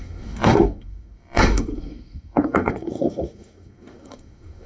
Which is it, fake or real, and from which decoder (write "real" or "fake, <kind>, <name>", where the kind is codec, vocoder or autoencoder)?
fake, codec, SNAC